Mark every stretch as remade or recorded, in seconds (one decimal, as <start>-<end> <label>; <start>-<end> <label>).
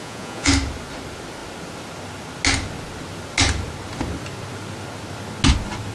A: 0.0-0.5 remade; 0.5-5.9 recorded